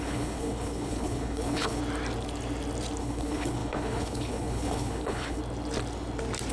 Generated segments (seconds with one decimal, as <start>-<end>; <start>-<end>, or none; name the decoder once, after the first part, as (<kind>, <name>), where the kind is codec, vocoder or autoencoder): 0.0-1.8 (codec, HILCodec); 3.0-5.4